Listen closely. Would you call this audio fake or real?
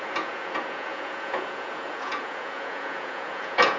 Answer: fake